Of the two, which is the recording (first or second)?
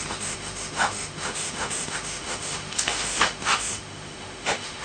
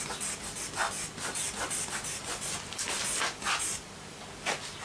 second